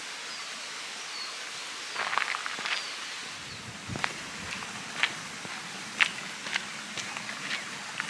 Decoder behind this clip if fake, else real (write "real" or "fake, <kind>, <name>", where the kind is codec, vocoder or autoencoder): real